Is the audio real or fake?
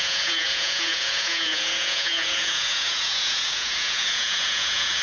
fake